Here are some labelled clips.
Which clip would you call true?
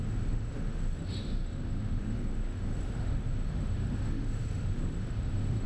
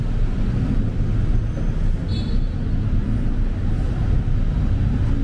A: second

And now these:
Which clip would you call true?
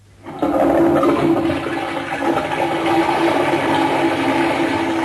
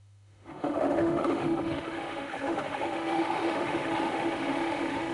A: first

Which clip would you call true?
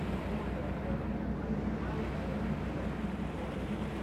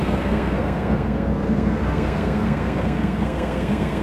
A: first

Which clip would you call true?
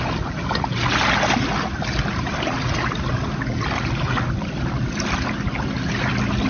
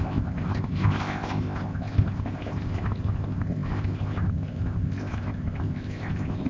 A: first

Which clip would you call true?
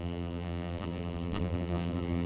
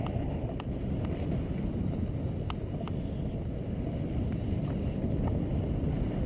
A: second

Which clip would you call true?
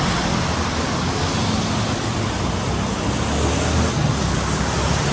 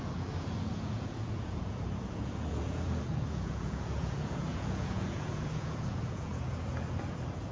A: first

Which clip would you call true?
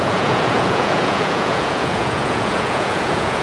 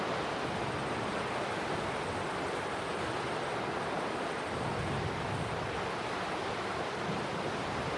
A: second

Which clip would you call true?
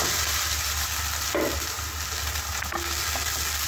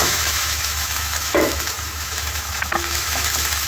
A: first